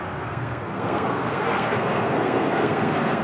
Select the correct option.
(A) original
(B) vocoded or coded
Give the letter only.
B